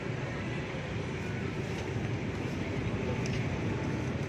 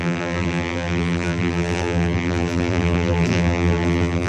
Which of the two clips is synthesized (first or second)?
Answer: second